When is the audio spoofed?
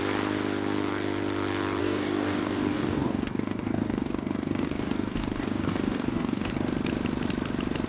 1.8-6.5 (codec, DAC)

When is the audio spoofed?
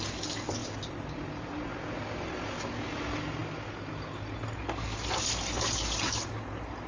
none